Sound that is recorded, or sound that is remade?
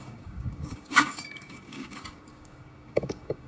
remade